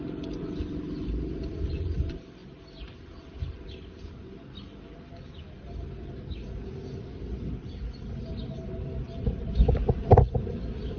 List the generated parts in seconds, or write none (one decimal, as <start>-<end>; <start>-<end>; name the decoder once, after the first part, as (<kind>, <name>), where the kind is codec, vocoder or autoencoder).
none